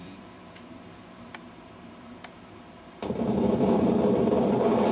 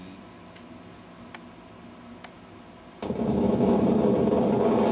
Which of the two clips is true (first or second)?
second